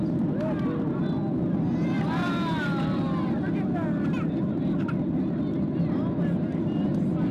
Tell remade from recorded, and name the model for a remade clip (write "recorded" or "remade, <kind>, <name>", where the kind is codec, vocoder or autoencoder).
recorded